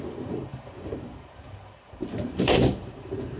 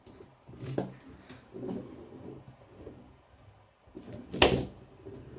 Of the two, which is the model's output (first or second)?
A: first